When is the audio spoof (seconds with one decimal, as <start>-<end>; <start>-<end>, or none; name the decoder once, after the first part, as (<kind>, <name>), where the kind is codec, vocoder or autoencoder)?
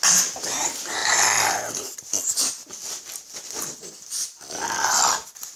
1.0-4.4 (vocoder, BigVGAN v2)